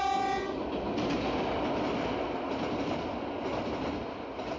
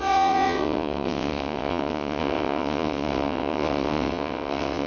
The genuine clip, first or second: first